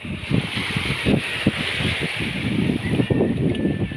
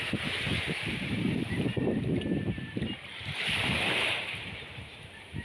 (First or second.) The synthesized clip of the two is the second